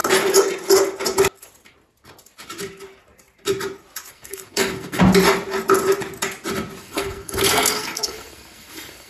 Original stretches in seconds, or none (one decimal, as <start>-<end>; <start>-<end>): 0.0-4.1; 5.0-6.8